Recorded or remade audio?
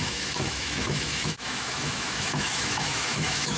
remade